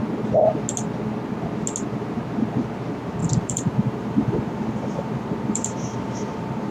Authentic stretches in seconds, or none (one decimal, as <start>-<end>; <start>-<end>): 0.0-3.2